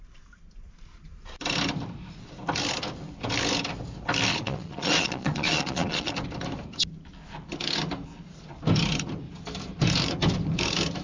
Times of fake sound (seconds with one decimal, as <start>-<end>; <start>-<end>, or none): 4.3-6.1